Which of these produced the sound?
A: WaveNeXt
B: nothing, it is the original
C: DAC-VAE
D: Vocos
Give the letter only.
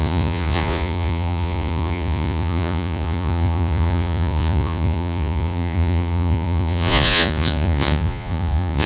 D